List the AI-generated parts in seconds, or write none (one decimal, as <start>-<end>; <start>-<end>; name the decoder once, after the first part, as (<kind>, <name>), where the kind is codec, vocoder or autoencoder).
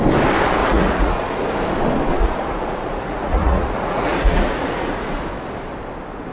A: 0.6-1.3 (vocoder, Vocos); 2.2-5.2